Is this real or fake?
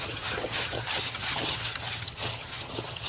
fake